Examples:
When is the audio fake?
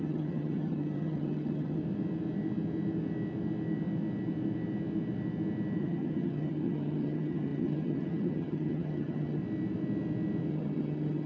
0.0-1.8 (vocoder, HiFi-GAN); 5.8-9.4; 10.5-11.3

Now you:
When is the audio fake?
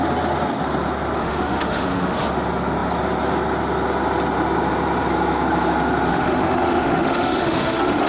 1.2-2.3 (autoencoder, DAC-VAE); 6.1-8.1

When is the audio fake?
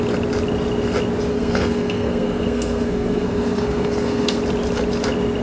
1.3-4.4 (codec, SNAC)